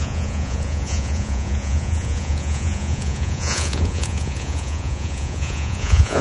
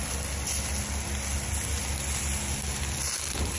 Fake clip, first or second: first